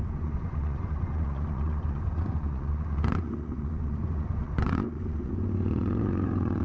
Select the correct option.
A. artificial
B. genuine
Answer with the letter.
A